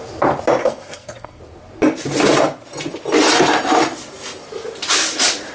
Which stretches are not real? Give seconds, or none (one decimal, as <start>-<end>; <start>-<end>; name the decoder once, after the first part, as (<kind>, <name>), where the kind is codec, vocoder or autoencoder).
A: 0.6-1.4 (codec, SNAC)